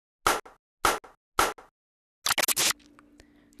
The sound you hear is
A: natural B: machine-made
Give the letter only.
A